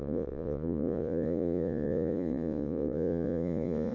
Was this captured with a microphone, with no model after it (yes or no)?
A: no